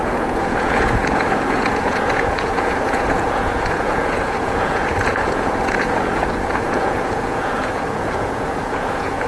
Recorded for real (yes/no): no